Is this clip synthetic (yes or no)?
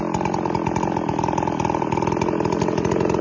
yes